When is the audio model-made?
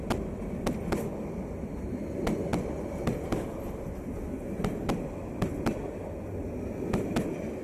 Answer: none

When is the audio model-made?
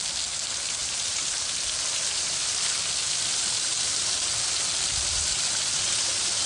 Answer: 0.8-1.4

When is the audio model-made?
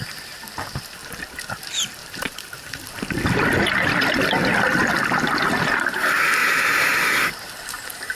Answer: 2.0-2.8; 6.4-7.5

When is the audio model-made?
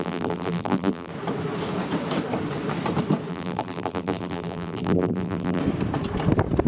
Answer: 0.0-1.1; 3.3-5.6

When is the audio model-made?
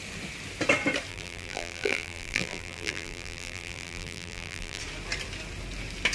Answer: 1.1-4.8